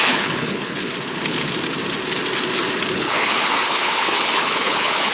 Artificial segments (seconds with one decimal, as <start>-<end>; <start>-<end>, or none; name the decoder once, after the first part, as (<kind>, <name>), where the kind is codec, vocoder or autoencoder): 0.0-0.9 (codec, HILCodec); 2.9-5.1